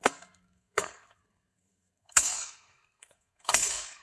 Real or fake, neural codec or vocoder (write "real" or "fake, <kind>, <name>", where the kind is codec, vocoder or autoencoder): fake, codec, SNAC